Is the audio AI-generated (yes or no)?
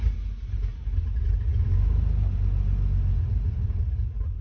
no